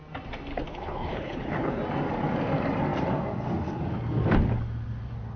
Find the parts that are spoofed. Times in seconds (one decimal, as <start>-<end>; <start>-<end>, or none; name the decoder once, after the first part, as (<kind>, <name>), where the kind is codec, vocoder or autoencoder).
0.5-1.8 (codec, HILCodec)